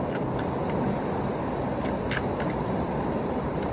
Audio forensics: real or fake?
real